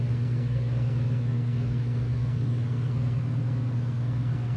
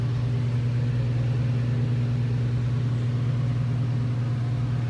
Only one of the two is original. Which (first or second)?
second